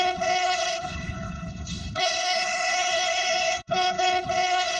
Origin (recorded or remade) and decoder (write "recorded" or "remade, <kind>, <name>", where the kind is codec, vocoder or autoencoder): remade, codec, HILCodec